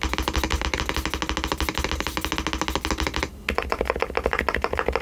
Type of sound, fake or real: real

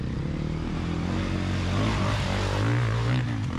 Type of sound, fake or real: real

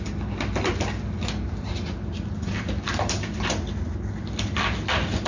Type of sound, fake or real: real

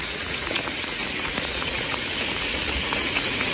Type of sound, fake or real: fake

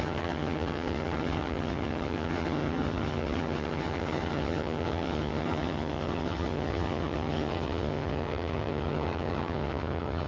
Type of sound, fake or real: fake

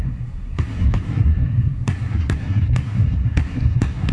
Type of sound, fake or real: fake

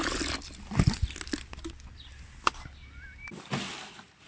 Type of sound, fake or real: real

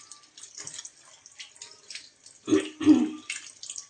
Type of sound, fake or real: real